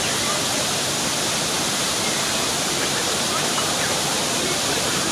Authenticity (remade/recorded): remade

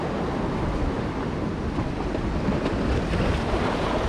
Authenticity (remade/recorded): recorded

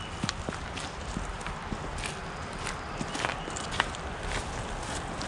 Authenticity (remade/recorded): recorded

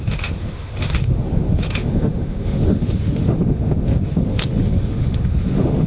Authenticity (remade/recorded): remade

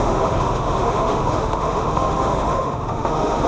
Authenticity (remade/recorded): remade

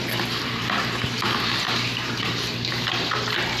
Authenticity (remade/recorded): recorded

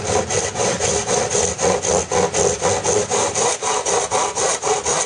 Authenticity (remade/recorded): recorded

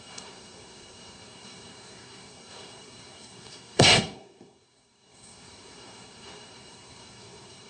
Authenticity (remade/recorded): remade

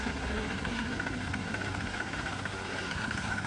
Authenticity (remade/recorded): remade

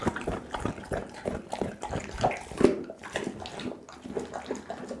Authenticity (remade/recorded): recorded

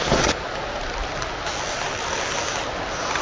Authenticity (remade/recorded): recorded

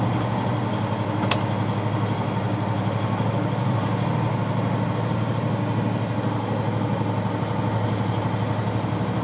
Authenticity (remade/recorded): recorded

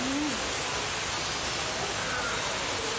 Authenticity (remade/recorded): recorded